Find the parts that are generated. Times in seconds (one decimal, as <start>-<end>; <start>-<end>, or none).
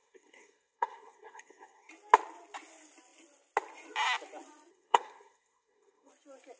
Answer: 0.0-1.9; 4.7-6.1